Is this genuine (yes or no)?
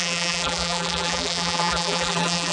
no